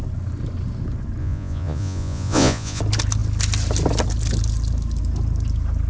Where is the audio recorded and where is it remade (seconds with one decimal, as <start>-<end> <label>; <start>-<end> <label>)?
0.0-1.2 recorded; 1.2-2.8 remade; 2.8-5.9 recorded